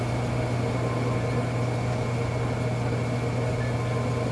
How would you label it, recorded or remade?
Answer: recorded